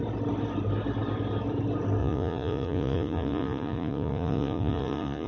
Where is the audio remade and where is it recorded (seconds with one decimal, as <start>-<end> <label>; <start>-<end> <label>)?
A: 0.0-2.0 recorded; 2.0-5.3 remade